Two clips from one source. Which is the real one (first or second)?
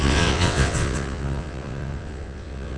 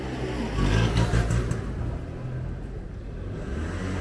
second